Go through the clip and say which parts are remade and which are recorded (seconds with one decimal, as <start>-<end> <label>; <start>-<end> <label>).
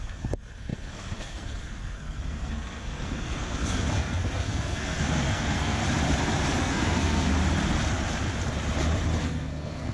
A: 0.0-5.8 remade; 5.8-6.6 recorded; 6.6-7.3 remade; 7.3-9.2 recorded; 9.2-9.9 remade